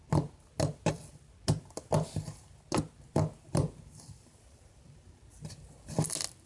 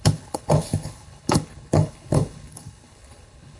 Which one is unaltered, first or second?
first